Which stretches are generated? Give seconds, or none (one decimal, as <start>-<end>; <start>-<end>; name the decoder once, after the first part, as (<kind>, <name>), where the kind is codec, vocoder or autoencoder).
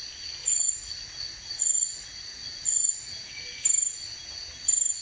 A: 0.4-3.3 (vocoder, Vocos)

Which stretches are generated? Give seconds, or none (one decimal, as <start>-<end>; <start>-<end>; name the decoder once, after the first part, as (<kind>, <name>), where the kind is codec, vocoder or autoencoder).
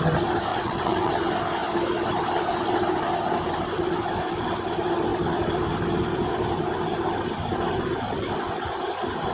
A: 0.5-1.1 (vocoder, WaveNeXt)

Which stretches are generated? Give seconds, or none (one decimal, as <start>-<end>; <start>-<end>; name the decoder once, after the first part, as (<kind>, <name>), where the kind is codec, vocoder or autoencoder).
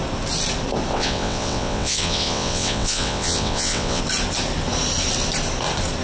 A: 0.9-4.0 (vocoder, WaveNeXt)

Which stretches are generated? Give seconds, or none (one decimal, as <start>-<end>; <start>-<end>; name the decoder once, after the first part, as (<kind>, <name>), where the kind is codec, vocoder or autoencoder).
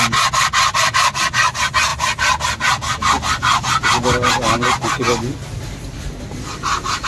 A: none